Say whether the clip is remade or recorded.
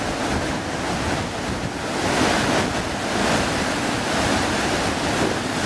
recorded